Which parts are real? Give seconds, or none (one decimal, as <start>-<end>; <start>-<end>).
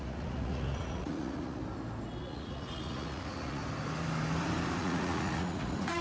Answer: 1.6-2.2; 3.6-4.8